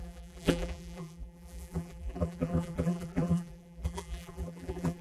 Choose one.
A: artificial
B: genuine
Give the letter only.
A